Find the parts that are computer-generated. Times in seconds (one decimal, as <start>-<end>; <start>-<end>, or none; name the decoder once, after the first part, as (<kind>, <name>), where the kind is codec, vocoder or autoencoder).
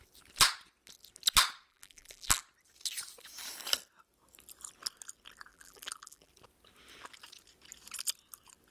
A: 1.7-2.4 (vocoder, BigVGAN v2); 5.5-6.3